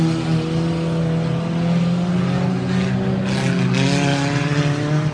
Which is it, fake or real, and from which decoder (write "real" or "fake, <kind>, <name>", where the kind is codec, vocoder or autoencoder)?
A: real